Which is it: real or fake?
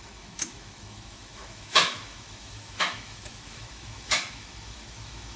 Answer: fake